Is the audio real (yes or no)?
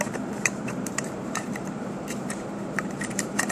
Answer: no